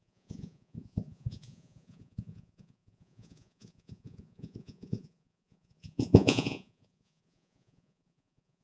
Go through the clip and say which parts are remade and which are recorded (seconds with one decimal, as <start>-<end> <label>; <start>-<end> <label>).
0.0-8.6 remade